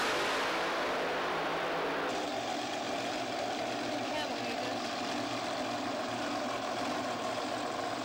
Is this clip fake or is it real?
real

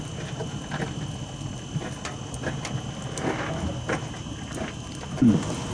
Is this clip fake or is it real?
real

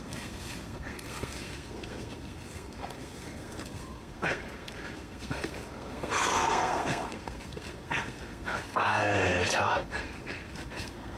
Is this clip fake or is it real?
fake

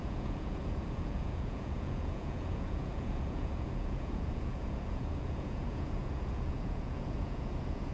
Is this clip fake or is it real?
fake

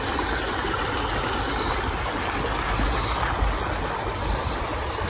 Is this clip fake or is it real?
real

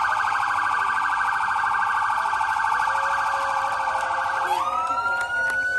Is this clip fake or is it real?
real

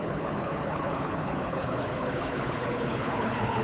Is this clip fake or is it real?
fake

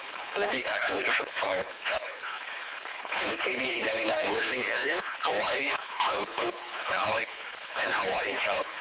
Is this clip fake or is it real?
fake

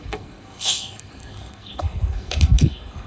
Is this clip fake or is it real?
fake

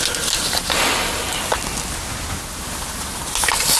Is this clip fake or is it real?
real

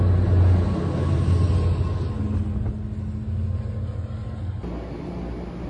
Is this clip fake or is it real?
real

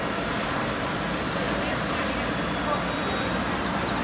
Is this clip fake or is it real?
real